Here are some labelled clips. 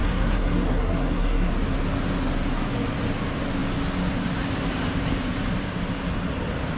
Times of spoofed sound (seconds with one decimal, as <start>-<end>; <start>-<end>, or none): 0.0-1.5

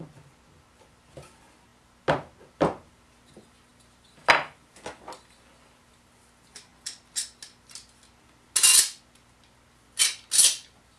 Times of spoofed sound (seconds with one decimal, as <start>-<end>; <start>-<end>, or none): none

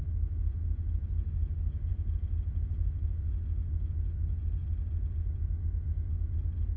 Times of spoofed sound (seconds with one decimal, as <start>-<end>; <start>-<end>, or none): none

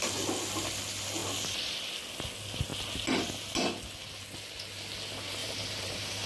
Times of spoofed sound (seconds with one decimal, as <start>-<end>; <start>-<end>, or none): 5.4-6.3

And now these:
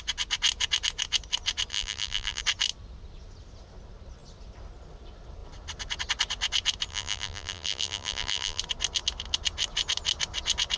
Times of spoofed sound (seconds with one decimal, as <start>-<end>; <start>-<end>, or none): 1.7-2.4; 6.9-8.6